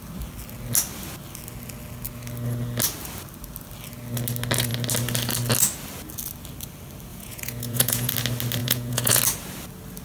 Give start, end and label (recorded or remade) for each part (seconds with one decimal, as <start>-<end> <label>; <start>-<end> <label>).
0.0-7.1 recorded; 7.1-8.1 remade; 8.1-8.6 recorded; 8.6-9.2 remade; 9.2-10.0 recorded

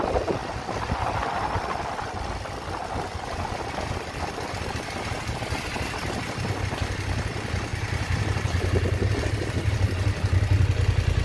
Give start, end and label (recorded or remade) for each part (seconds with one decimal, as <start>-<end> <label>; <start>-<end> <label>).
0.0-7.7 recorded; 7.7-8.2 remade; 8.2-11.2 recorded

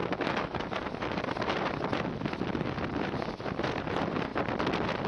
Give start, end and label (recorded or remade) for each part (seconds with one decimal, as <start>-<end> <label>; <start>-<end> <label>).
0.0-0.8 remade; 0.8-5.1 recorded

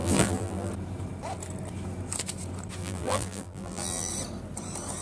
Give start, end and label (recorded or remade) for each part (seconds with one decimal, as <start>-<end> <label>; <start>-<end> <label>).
0.0-0.7 remade; 0.7-2.8 recorded; 2.8-4.1 remade; 4.1-5.0 recorded

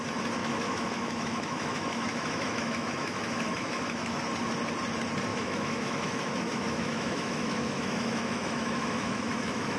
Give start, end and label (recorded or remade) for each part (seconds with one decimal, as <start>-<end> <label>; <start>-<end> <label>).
0.0-0.4 recorded; 0.4-4.2 remade; 4.2-5.3 recorded; 5.3-9.8 remade